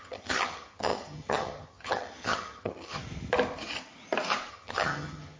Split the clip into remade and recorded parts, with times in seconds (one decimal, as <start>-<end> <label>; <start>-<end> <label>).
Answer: 0.0-3.0 remade; 3.0-4.5 recorded; 4.5-5.4 remade